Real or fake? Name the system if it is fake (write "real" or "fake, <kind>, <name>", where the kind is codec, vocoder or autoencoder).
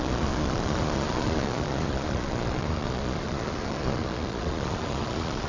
fake, vocoder, Vocos